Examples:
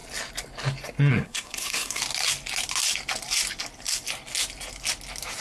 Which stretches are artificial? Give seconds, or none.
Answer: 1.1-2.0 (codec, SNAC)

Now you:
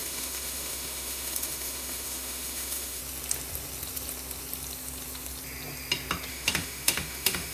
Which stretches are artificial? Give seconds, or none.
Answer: 0.0-3.0 (autoencoder, DAC-VAE); 6.3-7.5

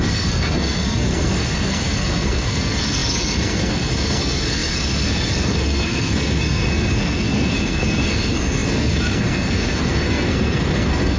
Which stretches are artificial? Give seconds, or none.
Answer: 0.0-11.2 (codec, SNAC)